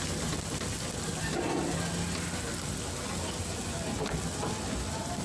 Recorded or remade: recorded